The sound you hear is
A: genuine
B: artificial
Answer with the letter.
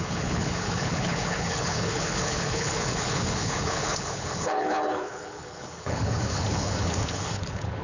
B